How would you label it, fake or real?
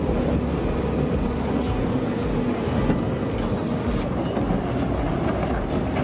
real